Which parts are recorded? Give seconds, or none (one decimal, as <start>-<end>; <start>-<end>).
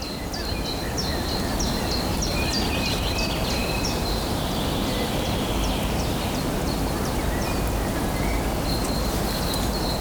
0.0-3.6; 8.0-10.0